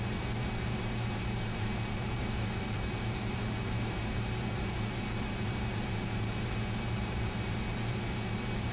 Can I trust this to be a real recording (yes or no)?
no